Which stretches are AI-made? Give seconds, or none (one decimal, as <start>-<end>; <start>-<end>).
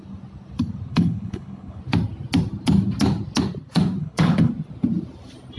0.9-1.8; 4.0-4.5